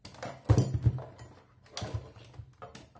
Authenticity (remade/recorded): recorded